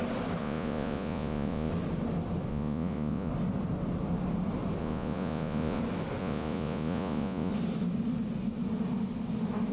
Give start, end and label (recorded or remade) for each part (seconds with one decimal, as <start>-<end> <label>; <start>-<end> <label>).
0.0-0.4 recorded; 0.4-1.7 remade; 1.7-2.5 recorded; 2.5-3.3 remade; 3.3-4.8 recorded; 4.8-5.8 remade; 5.8-6.2 recorded; 6.2-7.5 remade; 7.5-9.7 recorded